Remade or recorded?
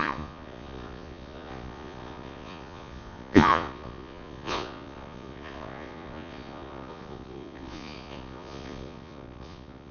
remade